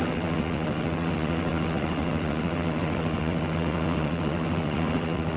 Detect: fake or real fake